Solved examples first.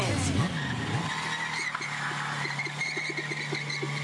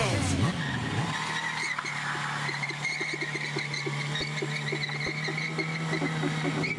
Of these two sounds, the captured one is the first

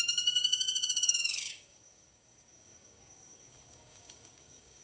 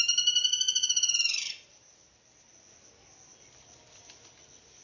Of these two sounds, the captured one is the second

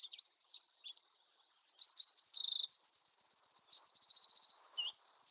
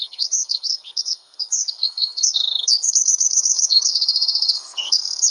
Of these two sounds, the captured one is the first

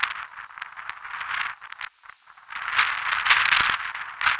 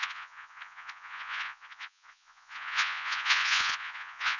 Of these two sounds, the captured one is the first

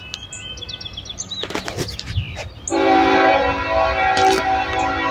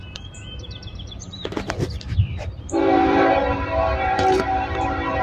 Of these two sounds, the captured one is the first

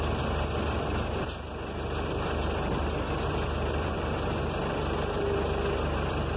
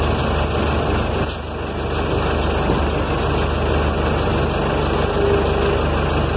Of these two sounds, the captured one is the second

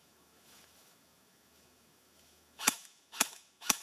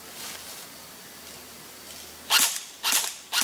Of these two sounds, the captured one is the second